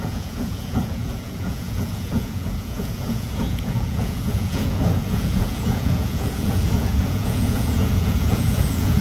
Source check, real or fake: fake